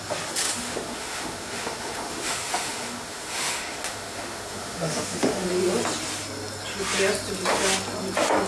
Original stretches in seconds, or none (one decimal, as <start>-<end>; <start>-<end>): 0.0-0.4; 5.5-8.5